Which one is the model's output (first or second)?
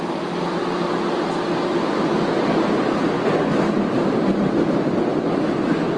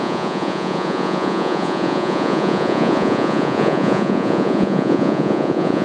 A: second